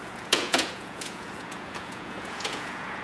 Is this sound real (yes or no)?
no